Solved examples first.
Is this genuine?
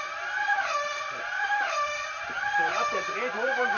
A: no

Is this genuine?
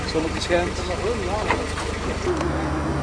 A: yes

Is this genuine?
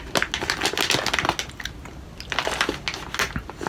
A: yes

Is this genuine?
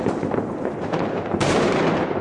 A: no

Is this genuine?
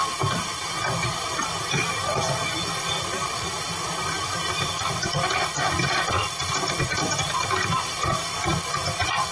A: yes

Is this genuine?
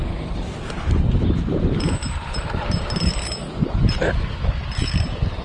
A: no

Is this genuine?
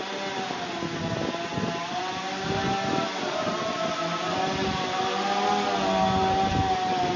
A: yes